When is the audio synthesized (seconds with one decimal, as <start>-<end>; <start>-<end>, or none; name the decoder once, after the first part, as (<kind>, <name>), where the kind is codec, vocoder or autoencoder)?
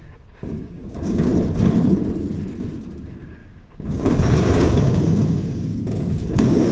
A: 0.0-1.3 (codec, DAC); 2.7-6.7